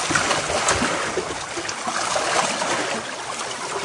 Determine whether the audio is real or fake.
real